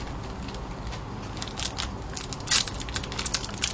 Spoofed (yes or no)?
no